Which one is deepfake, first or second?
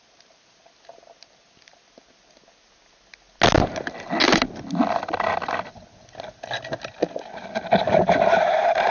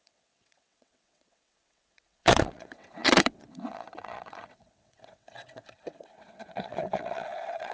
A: second